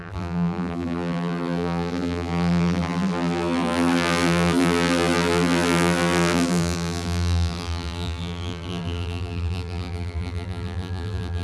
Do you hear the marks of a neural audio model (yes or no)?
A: yes